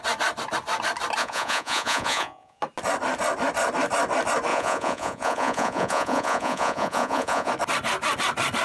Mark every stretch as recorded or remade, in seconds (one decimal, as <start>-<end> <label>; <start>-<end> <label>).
0.0-1.2 recorded; 1.2-2.6 remade; 2.6-4.5 recorded; 4.5-7.5 remade; 7.5-8.6 recorded